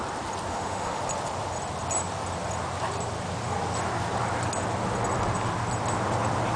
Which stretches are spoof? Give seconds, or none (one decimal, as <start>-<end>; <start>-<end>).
0.5-1.0